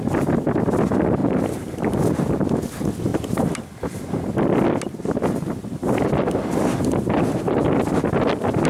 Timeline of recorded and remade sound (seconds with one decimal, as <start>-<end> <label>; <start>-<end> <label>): 0.0-1.2 recorded; 1.2-1.8 remade; 1.8-3.1 recorded; 3.1-3.8 remade; 3.8-5.8 recorded; 5.8-7.4 remade; 7.4-8.7 recorded